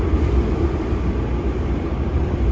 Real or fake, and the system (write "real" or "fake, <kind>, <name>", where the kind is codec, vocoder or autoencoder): fake, vocoder, BigVGAN v2